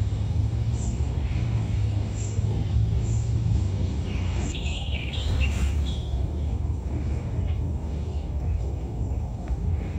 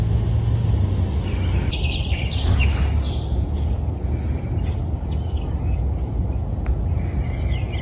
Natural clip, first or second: second